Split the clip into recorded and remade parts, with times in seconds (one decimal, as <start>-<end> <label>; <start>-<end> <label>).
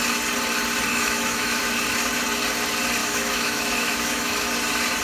0.0-0.9 recorded; 0.9-1.6 remade; 1.6-3.0 recorded; 3.0-4.5 remade; 4.5-5.0 recorded